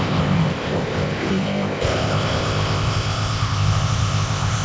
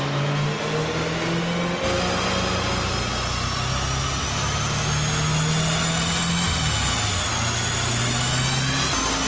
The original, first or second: second